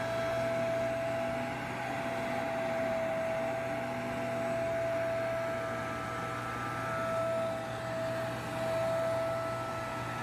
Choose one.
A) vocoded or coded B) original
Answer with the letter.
B